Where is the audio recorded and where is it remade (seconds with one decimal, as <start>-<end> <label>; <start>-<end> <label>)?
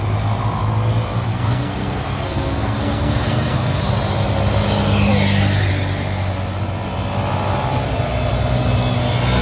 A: 0.0-1.3 recorded; 1.3-3.8 remade; 3.8-9.4 recorded